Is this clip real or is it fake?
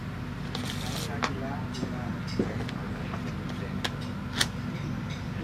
real